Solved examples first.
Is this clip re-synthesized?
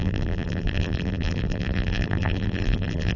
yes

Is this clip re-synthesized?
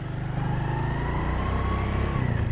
no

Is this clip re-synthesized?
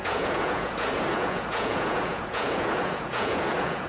yes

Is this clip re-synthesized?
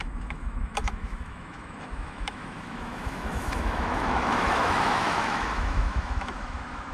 yes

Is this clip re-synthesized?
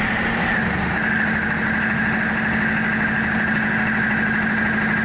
no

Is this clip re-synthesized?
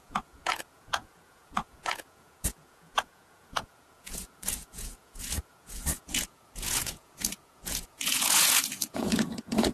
yes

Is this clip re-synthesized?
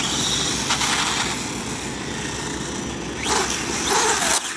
no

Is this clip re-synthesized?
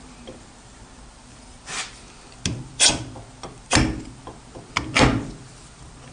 no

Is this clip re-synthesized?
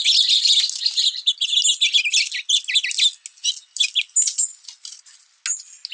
no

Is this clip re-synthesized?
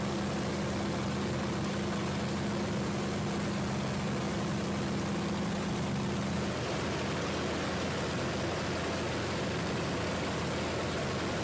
no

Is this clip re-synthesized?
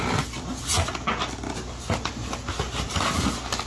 no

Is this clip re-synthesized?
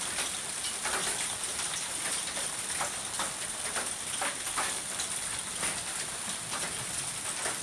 yes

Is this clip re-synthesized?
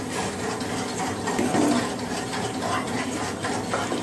no